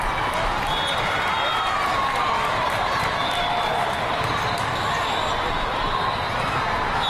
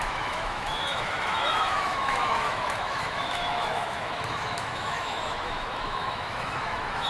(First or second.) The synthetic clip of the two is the second